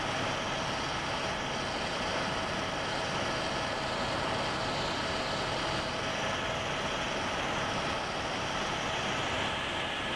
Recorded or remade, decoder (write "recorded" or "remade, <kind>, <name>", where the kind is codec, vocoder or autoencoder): recorded